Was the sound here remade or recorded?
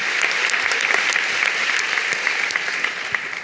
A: recorded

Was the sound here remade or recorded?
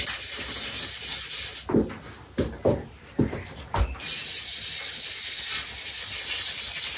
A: recorded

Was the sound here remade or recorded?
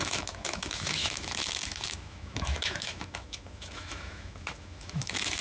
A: remade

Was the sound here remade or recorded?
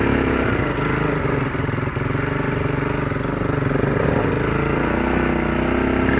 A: recorded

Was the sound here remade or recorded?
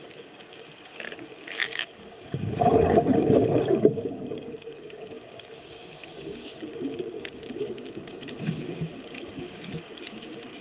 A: remade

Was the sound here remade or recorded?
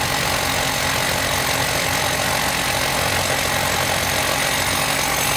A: recorded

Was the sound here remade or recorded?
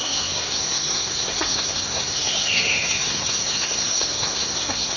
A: remade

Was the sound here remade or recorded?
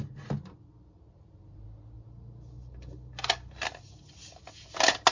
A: recorded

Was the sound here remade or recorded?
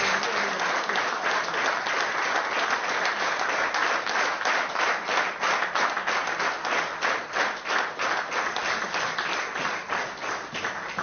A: recorded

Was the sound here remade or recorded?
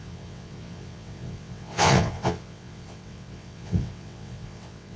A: remade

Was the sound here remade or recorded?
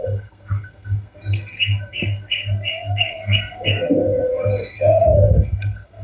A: remade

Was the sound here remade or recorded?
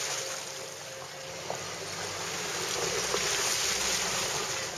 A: recorded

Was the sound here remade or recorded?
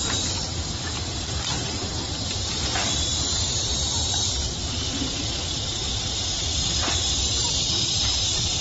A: remade